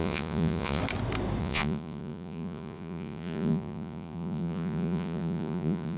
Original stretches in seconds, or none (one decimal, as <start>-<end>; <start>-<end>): 0.8-1.4